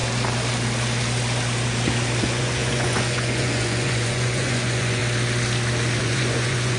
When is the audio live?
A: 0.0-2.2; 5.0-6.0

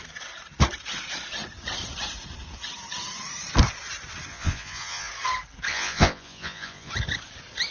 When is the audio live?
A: 0.0-4.3; 5.1-5.7; 6.9-7.7

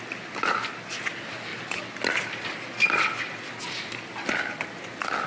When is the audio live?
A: 0.0-5.3

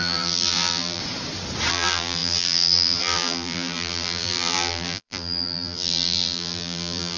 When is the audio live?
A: 1.0-1.7

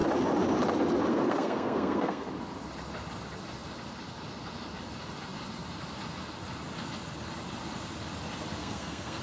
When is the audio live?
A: 0.0-1.1; 2.3-8.6

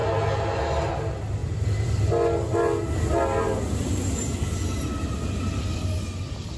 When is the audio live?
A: 0.0-6.6

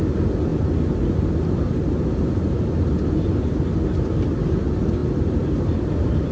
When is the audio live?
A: 0.0-6.3

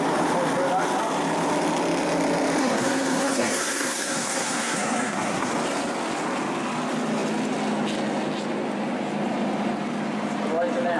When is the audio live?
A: 0.0-2.6; 5.5-11.0